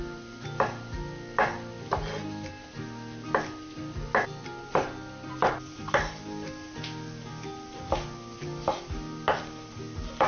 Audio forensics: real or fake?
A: real